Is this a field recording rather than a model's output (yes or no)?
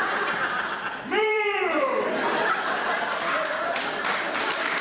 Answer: no